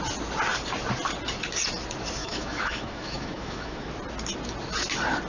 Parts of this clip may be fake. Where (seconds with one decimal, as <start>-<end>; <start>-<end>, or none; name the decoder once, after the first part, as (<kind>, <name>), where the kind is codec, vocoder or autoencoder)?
2.2-3.9 (autoencoder, DAC-VAE)